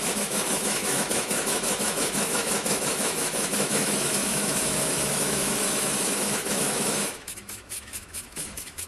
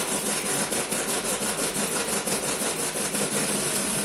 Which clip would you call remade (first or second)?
first